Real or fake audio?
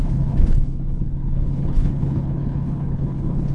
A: fake